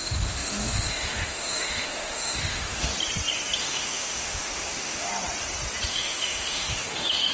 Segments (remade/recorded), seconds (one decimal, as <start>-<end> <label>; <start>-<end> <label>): 0.0-2.9 remade; 2.9-3.6 recorded; 3.6-5.1 remade; 5.1-5.9 recorded; 5.9-7.3 remade